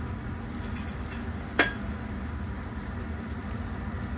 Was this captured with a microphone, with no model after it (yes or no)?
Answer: yes